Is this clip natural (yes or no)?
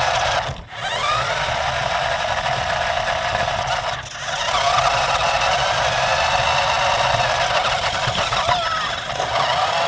yes